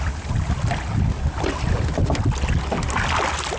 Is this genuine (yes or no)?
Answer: yes